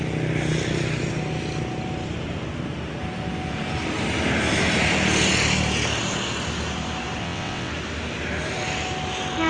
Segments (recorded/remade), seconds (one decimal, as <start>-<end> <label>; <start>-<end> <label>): 0.0-7.2 recorded; 7.2-7.7 remade; 7.7-9.5 recorded